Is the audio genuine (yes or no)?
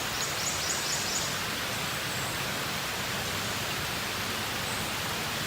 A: yes